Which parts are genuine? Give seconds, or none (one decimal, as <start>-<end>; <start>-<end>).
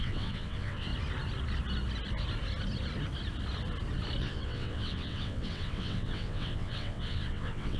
0.9-4.2